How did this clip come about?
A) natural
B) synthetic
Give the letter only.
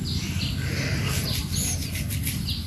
A